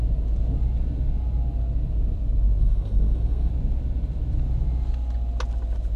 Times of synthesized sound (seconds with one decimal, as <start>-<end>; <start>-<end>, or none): 2.6-3.5